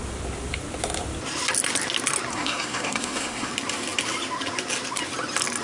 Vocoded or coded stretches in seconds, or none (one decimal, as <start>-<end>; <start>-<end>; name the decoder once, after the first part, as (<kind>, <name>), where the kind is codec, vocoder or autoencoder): 2.3-3.5 (codec, SNAC)